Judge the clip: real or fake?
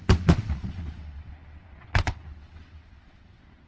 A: fake